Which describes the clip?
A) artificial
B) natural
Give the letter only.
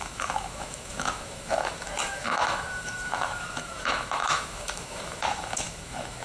A